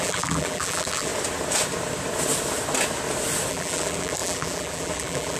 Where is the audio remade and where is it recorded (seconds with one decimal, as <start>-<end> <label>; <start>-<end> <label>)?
0.0-1.1 remade; 1.1-3.5 recorded; 3.5-5.4 remade